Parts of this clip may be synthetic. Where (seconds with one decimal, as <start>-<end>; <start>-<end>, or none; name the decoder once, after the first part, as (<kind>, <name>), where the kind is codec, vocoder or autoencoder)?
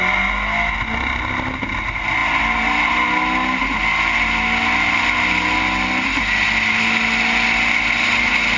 none